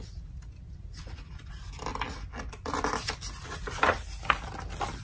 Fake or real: real